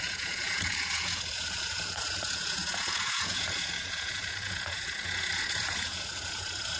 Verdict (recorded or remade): remade